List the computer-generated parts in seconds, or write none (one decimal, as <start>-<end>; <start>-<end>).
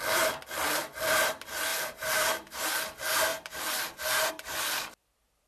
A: 1.7-2.6; 3.3-4.3